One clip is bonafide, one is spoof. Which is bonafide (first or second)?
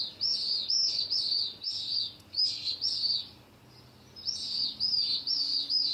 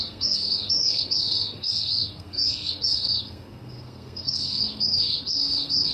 first